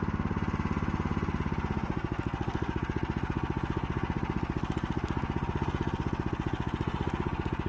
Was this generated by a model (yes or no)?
no